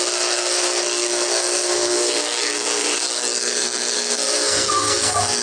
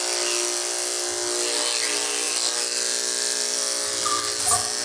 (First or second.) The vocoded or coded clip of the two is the first